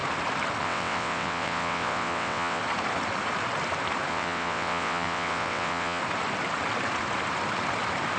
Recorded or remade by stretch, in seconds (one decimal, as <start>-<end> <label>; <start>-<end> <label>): 0.0-0.6 recorded; 0.6-2.6 remade; 2.6-4.1 recorded; 4.1-6.0 remade; 6.0-8.2 recorded